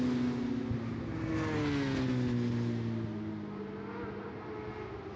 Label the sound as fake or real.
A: real